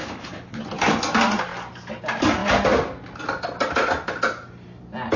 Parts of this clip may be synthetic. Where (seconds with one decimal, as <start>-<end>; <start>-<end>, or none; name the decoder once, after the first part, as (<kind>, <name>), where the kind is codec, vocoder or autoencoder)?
0.0-0.6 (codec, HILCodec)